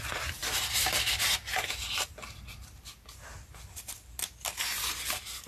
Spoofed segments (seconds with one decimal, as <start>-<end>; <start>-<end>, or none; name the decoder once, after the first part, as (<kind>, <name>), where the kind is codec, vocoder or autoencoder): none